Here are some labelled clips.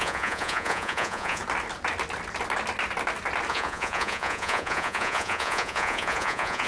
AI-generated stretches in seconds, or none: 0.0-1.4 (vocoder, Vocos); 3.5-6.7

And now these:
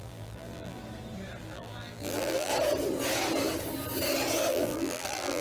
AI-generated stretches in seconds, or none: 0.0-0.8 (vocoder, BigVGAN v2); 1.4-2.5; 4.5-5.4